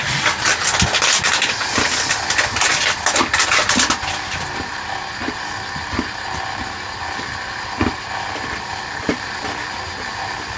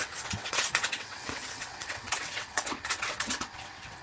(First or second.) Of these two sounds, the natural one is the first